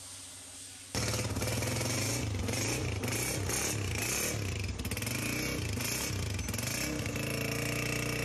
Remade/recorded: recorded